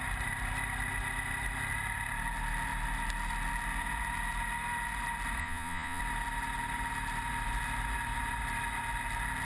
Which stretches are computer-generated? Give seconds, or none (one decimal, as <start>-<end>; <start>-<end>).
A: 5.4-6.0